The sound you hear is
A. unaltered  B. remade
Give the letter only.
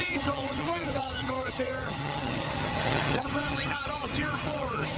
B